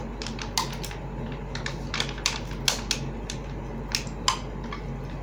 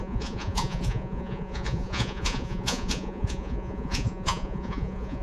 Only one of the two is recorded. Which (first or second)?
first